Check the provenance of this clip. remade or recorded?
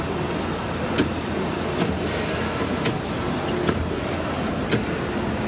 recorded